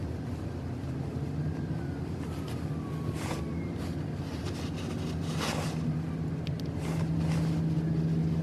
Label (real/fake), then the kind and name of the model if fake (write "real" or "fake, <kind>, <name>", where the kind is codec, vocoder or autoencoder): real